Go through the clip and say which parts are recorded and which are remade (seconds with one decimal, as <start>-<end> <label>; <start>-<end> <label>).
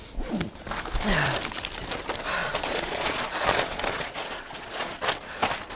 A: 0.0-2.4 recorded; 2.4-5.1 remade; 5.1-5.8 recorded